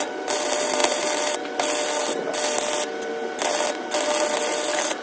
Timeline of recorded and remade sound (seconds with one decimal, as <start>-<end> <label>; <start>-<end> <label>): 0.0-5.0 recorded